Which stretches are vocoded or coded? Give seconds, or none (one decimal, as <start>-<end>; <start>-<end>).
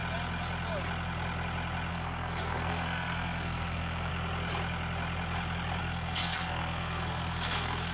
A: 1.9-4.1; 5.8-7.9